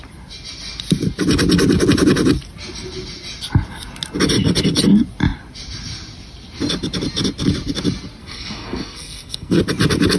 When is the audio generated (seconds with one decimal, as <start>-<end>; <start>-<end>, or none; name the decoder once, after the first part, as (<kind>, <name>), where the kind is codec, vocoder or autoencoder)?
8.2-9.6 (codec, SNAC)